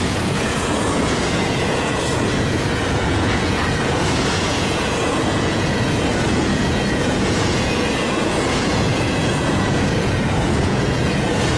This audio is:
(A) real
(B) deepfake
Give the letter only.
B